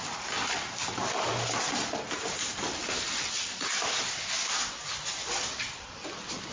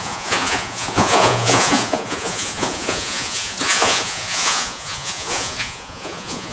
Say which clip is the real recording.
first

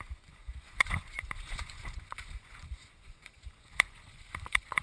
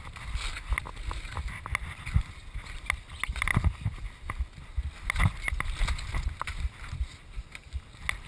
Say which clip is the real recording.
second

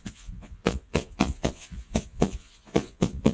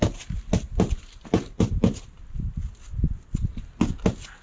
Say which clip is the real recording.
second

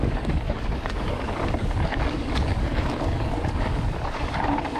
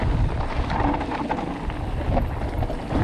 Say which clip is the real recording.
second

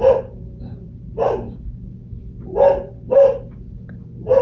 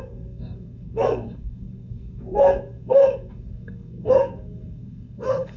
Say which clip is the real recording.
first